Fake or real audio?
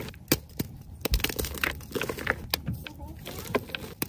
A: real